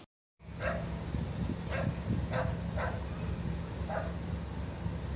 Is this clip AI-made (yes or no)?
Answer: no